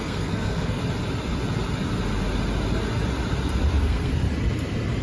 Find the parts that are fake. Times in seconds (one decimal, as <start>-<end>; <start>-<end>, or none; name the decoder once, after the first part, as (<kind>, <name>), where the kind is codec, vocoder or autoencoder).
0.0-0.8 (codec, SNAC); 3.8-4.2